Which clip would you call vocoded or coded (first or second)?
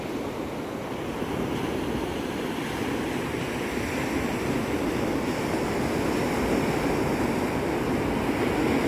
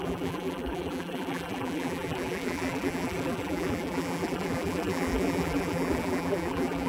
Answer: second